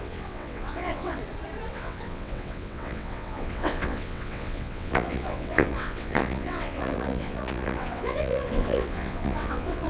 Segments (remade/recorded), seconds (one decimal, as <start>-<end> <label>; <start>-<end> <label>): 0.0-1.2 remade; 1.2-1.7 recorded; 1.7-9.9 remade